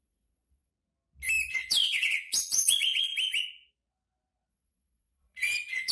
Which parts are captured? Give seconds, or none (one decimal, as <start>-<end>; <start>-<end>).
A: 0.7-1.5; 3.1-4.5